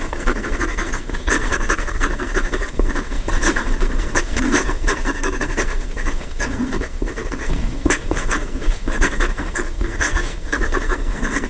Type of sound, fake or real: fake